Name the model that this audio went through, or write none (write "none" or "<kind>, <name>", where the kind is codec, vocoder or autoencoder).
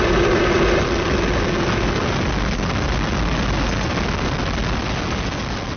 none